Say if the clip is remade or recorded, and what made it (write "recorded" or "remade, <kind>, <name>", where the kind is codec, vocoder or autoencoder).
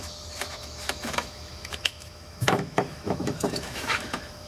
remade, autoencoder, DAC-VAE